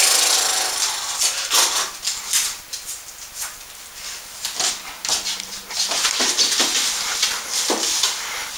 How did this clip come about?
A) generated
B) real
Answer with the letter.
B